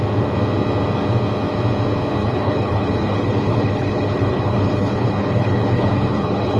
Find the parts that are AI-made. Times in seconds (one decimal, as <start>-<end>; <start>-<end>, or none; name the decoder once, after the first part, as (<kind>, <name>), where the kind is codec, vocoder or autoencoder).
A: 2.2-6.6 (codec, HILCodec)